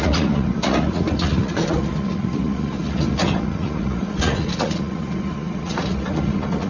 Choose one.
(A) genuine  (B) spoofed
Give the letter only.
B